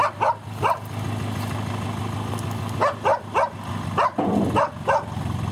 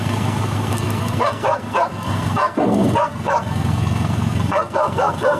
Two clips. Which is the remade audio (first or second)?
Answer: second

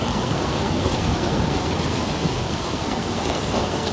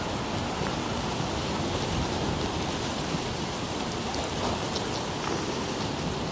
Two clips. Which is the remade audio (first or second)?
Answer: first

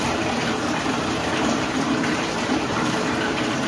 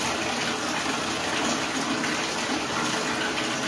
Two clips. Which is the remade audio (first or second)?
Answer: first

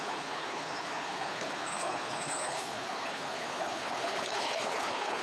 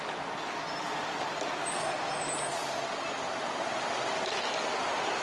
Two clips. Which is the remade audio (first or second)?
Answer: first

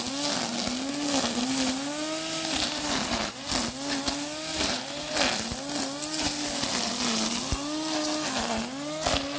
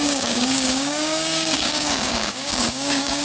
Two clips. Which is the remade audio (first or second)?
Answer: second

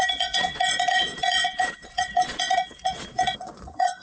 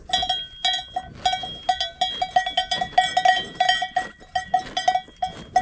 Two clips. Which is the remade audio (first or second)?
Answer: first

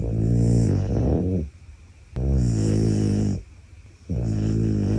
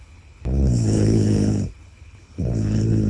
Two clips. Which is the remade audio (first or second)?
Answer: second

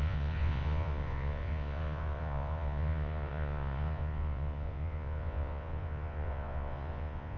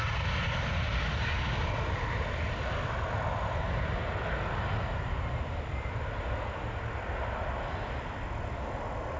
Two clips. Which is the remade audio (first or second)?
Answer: first